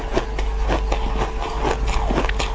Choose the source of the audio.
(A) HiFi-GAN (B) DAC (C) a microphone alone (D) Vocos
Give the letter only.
C